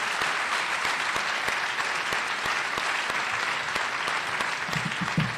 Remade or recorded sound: recorded